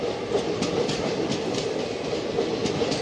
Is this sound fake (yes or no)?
no